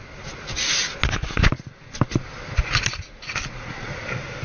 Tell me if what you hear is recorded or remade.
recorded